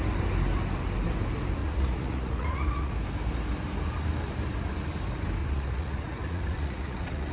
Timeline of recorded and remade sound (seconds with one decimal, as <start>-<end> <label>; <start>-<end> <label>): 0.0-1.6 recorded; 1.6-2.9 remade; 2.9-5.4 recorded; 5.4-7.3 remade